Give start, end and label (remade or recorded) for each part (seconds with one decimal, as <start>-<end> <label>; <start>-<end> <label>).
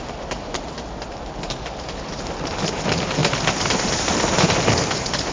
0.0-5.3 recorded